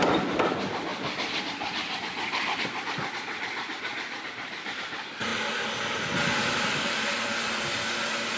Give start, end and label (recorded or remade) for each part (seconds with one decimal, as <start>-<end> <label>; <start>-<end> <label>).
0.0-8.4 recorded